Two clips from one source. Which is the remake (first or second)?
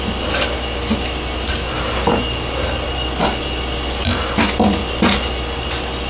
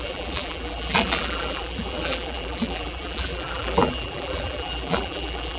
second